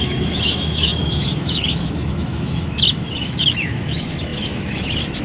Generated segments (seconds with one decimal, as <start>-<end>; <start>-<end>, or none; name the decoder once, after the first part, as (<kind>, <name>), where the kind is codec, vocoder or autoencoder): 0.0-5.2 (autoencoder, DAC-VAE)